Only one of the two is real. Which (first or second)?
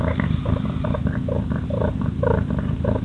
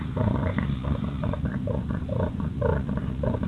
first